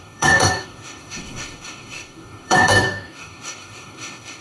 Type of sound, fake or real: fake